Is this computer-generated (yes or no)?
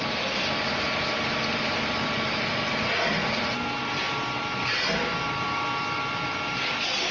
no